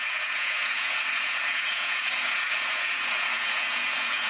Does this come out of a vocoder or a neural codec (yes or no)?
yes